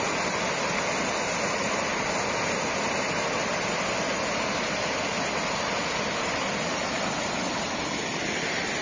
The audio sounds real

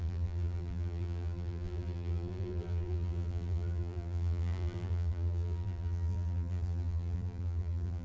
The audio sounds fake